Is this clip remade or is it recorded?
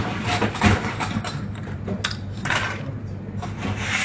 remade